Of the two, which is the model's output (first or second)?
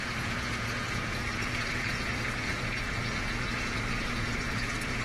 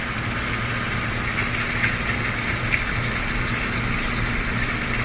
first